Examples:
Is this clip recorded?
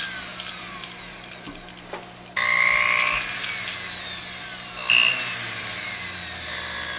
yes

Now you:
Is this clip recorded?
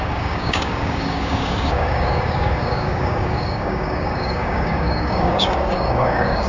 no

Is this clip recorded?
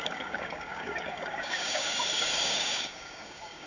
no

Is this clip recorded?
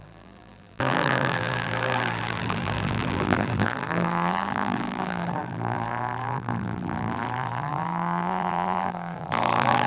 no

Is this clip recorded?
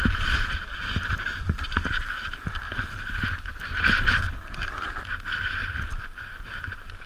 no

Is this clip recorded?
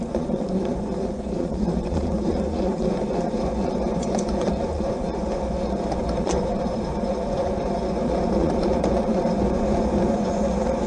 no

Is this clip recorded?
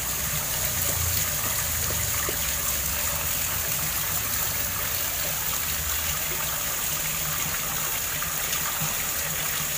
yes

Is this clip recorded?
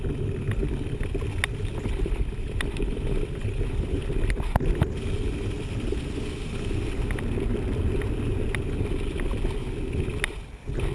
yes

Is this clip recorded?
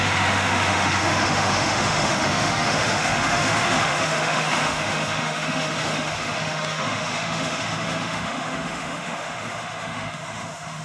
no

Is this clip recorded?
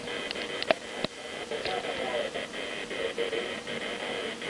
yes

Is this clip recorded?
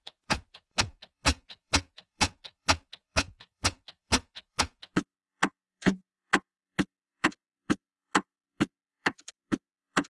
no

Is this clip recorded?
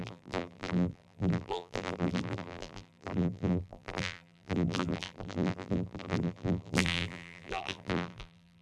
no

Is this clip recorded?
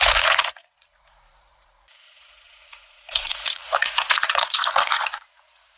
no